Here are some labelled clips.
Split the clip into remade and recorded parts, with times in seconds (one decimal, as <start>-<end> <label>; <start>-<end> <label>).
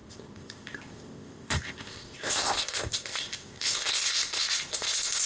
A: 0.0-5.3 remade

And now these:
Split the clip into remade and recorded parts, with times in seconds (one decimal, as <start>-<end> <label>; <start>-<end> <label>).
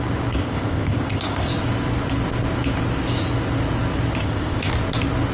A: 0.0-0.4 recorded; 0.4-1.5 remade; 1.5-4.2 recorded; 4.2-4.7 remade; 4.7-5.3 recorded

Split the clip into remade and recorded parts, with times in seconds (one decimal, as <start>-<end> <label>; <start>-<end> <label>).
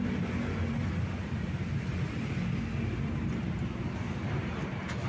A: 0.0-5.1 recorded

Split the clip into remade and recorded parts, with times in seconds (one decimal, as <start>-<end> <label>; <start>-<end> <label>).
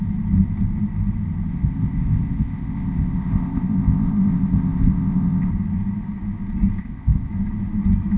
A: 0.0-1.5 recorded; 1.5-5.5 remade; 5.5-6.8 recorded; 6.8-7.3 remade; 7.3-8.2 recorded